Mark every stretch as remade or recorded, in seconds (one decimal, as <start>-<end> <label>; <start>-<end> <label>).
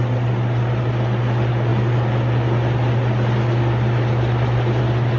0.0-5.2 recorded